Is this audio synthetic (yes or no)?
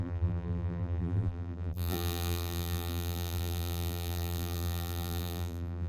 yes